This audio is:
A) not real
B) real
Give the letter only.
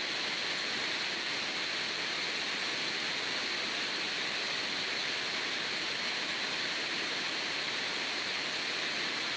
B